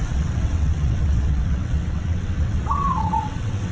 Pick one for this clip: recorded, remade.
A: remade